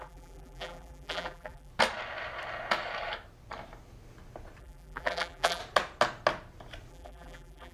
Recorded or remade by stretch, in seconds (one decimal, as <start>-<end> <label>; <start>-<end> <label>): 0.0-1.7 remade; 1.7-4.6 recorded; 4.6-5.6 remade; 5.6-6.9 recorded; 6.9-7.7 remade